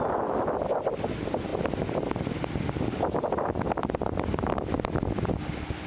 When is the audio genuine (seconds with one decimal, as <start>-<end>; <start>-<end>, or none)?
0.0-5.9